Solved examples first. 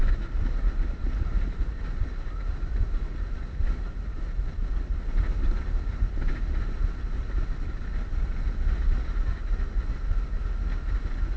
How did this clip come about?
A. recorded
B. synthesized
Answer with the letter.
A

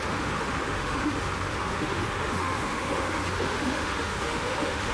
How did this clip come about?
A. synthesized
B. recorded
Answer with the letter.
A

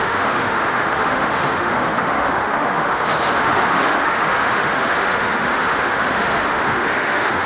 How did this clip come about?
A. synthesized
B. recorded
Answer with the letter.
A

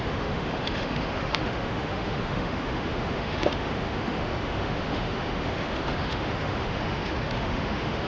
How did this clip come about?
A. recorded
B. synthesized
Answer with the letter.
B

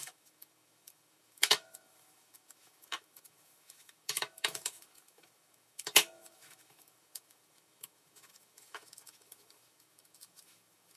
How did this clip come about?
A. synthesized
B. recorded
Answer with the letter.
A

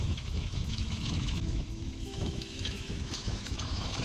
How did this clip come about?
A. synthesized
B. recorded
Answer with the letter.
A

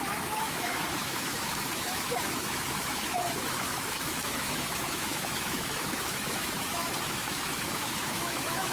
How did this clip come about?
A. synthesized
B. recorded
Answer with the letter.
A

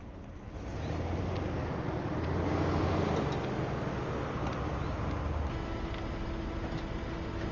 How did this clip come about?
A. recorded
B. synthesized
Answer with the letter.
A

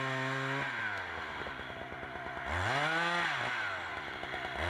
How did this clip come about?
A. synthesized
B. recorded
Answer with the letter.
B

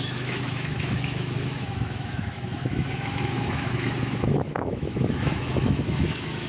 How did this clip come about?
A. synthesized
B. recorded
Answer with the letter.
A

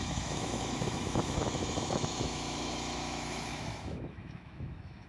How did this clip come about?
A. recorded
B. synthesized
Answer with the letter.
B